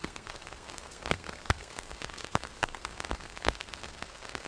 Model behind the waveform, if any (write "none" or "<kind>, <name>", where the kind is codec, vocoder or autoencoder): codec, SNAC